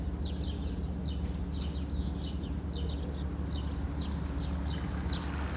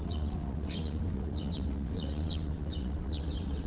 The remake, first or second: second